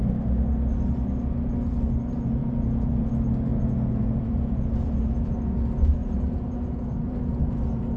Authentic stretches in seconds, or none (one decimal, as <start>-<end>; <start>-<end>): 0.0-2.4; 3.1-3.5; 5.3-6.0; 7.4-8.0